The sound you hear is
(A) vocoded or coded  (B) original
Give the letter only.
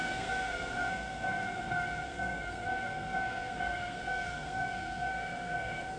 A